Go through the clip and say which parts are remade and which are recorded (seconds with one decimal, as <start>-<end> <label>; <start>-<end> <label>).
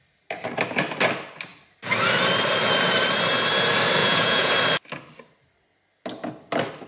0.0-4.0 recorded; 4.0-4.5 remade; 4.5-6.9 recorded